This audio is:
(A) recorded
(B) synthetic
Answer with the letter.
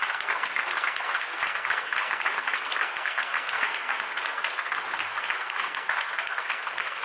B